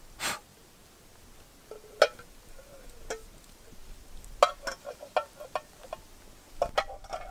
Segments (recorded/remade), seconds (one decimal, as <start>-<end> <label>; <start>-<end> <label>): 0.0-7.3 recorded